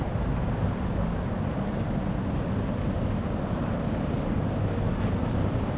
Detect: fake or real real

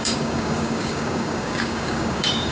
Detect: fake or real fake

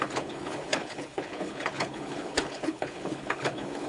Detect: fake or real fake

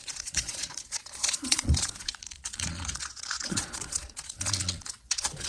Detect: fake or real fake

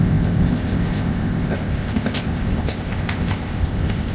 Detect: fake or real fake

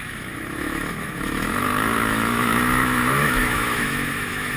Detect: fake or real fake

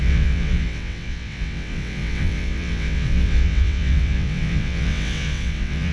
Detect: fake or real fake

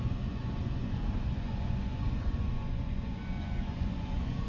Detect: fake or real fake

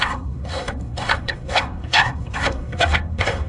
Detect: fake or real fake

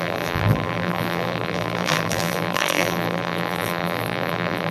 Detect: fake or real fake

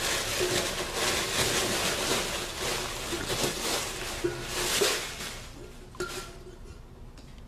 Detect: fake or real real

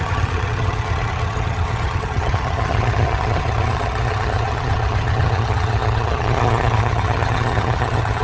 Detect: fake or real fake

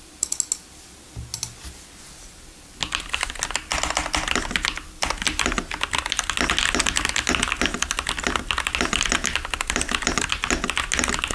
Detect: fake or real real